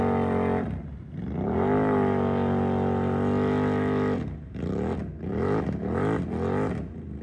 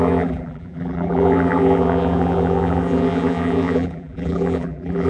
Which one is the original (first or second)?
first